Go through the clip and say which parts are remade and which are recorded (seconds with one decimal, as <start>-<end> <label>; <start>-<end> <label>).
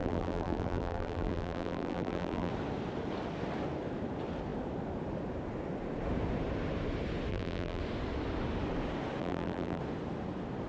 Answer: 0.0-2.5 remade; 2.5-7.3 recorded; 7.3-7.8 remade; 7.8-9.2 recorded; 9.2-9.8 remade; 9.8-10.7 recorded